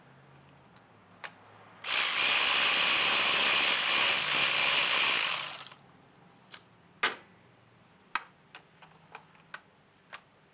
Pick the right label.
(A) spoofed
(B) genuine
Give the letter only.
B